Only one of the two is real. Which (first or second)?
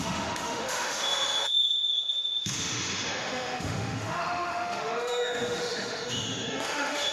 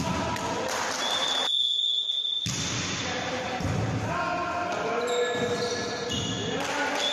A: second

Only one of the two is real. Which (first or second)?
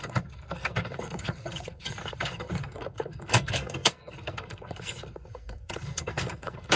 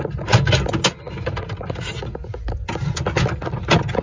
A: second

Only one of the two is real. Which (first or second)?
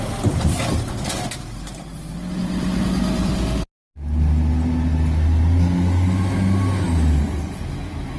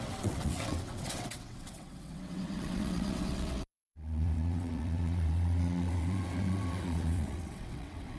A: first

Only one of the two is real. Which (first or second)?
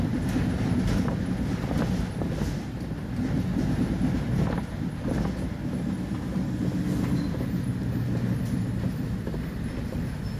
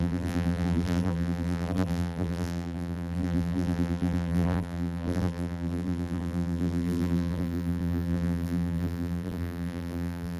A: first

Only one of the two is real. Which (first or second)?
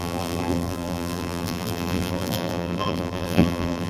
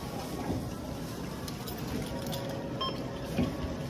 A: second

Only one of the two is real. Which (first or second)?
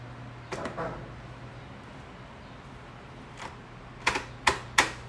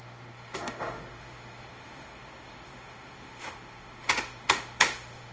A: first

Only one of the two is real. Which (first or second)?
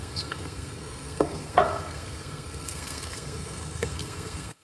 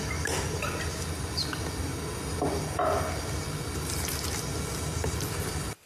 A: second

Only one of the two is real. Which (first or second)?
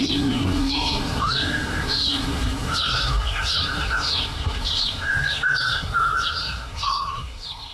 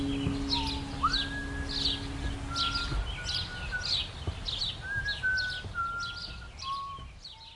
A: second